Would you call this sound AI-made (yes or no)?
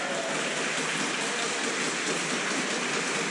no